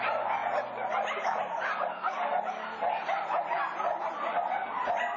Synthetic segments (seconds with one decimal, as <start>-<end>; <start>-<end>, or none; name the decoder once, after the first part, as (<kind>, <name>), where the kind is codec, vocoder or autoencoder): none